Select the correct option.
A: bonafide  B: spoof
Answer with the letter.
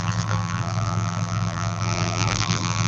B